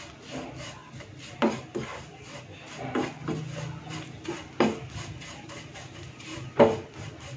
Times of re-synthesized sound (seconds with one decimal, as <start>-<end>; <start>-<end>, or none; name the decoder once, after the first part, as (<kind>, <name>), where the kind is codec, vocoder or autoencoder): none